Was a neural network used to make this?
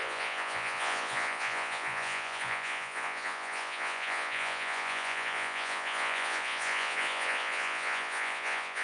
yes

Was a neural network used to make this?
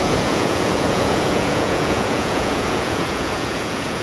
yes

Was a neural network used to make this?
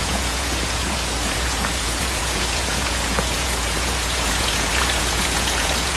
yes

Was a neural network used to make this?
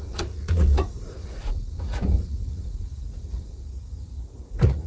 yes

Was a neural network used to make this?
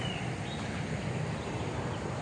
no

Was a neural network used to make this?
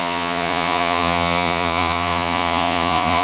yes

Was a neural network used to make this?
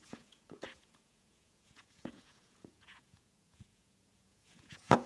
yes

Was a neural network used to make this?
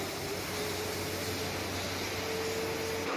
no